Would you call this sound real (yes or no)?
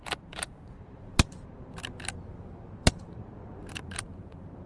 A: no